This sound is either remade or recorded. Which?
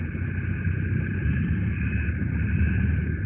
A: recorded